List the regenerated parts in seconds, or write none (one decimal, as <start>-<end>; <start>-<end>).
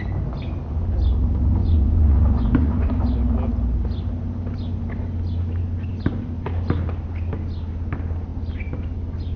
1.6-2.9